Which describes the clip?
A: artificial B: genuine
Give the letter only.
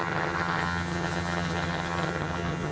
A